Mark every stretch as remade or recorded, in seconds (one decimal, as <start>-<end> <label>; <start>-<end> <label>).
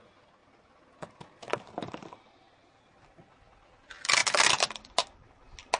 0.0-5.8 recorded